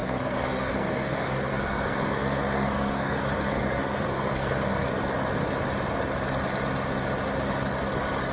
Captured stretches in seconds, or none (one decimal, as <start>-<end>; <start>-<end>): 4.9-8.3